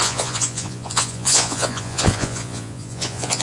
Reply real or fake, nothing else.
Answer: fake